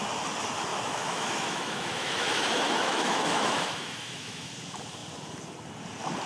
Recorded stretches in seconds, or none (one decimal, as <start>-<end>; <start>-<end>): 0.0-0.7; 4.5-6.3